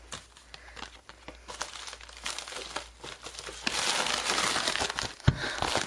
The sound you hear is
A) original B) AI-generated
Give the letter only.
A